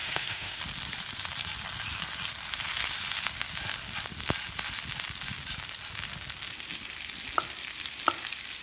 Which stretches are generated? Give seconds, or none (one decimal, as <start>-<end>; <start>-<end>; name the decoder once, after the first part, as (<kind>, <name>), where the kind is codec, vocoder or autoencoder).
0.0-0.6 (autoencoder, DAC-VAE)